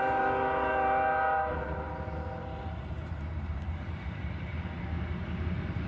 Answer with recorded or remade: remade